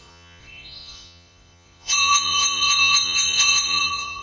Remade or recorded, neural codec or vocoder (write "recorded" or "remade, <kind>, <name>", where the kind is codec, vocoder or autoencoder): remade, vocoder, Vocos